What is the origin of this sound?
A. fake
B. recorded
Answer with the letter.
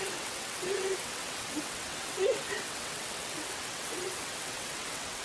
A